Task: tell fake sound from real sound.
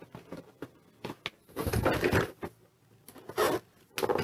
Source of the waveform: real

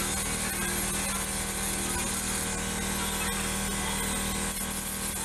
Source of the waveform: real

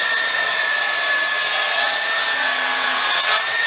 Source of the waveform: fake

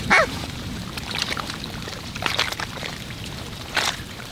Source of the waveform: fake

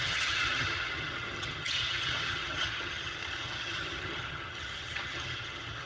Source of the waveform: fake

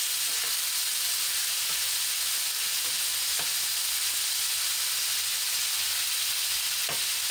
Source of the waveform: real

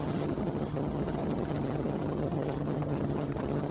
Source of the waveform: fake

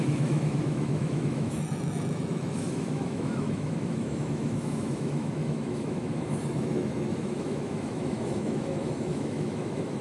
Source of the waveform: fake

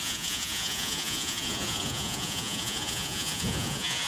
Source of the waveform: fake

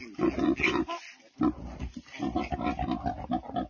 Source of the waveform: real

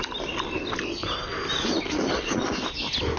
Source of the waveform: real